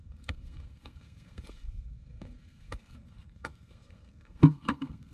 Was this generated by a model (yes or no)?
yes